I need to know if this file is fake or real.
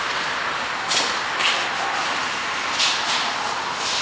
real